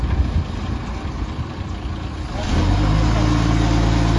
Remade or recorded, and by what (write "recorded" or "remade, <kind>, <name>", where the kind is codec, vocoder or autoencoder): recorded